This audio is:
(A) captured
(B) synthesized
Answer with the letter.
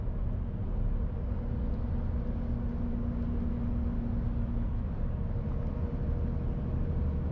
A